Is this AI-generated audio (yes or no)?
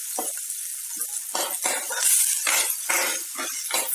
no